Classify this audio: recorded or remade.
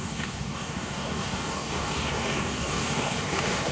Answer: remade